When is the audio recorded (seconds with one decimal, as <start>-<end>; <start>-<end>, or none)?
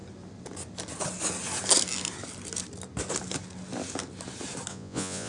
0.0-4.7